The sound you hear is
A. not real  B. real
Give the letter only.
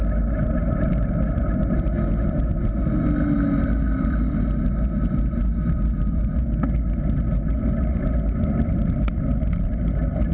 B